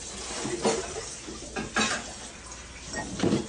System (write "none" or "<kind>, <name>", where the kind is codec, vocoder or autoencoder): none